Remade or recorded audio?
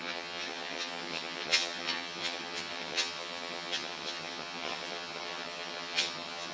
remade